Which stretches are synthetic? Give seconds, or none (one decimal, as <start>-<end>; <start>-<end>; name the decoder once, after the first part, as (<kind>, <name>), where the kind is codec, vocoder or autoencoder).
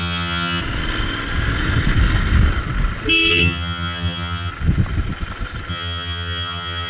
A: 0.0-0.6 (vocoder, HiFi-GAN); 3.3-4.5; 5.7-6.9